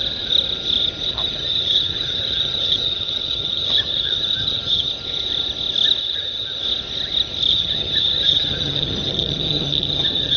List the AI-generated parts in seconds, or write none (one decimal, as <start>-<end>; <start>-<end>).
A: 1.1-4.9; 6.0-6.6; 7.5-10.4